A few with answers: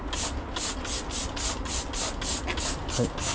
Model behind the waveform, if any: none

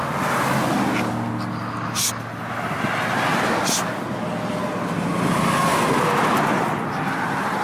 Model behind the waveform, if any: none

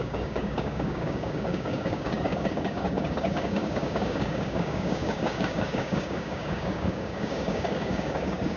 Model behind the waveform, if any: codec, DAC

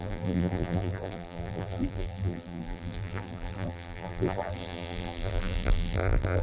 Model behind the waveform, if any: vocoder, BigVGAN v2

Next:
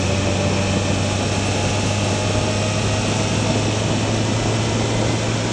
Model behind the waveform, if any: none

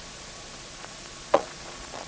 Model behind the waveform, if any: vocoder, Vocos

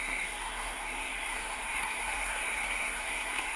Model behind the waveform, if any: codec, SNAC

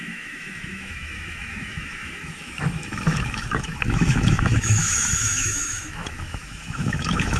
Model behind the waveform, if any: autoencoder, DAC-VAE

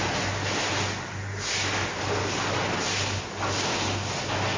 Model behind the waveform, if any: none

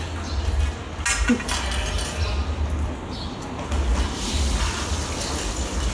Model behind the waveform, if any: none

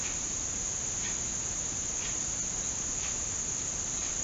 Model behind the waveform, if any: none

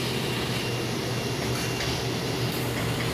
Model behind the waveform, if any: none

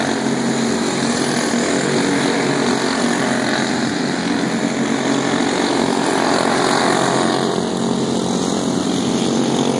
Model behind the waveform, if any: none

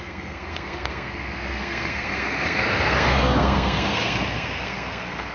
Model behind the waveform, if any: codec, SNAC